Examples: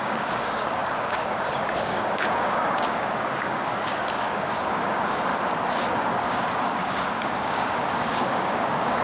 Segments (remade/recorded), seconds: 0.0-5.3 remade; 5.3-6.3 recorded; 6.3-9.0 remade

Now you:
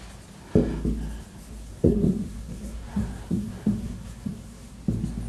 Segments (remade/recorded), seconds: 0.0-1.6 recorded; 1.6-4.8 remade; 4.8-5.3 recorded

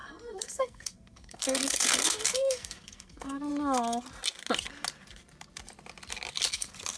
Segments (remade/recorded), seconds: 0.0-3.5 remade; 3.5-6.5 recorded; 6.5-7.0 remade

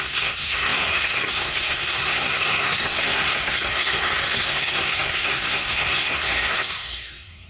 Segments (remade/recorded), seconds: 0.0-7.5 remade

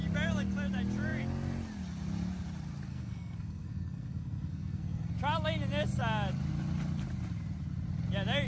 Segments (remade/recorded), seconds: 0.0-2.9 recorded; 2.9-5.1 remade; 5.1-8.5 recorded

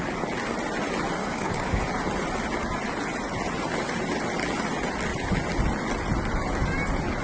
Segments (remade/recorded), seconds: 0.0-1.2 recorded; 1.2-1.8 remade; 1.8-7.2 recorded

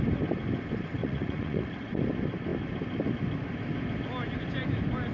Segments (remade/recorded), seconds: 0.0-1.0 recorded; 1.0-1.9 remade; 1.9-5.1 recorded